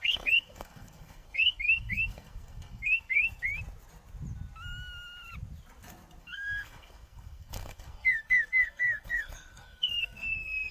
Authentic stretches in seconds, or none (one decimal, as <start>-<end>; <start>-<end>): 3.5-6.2